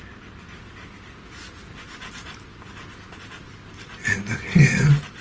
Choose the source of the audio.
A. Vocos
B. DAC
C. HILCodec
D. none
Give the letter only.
D